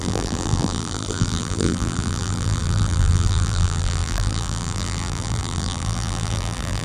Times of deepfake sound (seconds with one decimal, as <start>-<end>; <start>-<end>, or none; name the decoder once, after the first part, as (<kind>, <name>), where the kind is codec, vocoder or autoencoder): 0.0-6.8 (vocoder, BigVGAN v2)